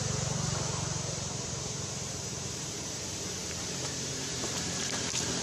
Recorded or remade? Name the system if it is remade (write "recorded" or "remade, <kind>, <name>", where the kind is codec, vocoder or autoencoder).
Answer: remade, vocoder, BigVGAN v2